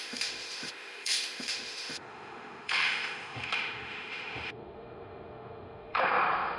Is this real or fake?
fake